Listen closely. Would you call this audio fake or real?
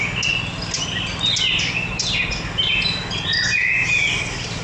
real